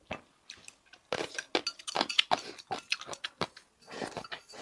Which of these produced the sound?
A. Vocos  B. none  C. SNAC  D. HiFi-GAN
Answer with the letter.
B